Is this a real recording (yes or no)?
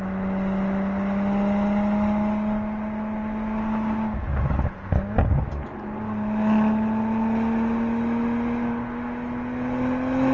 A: yes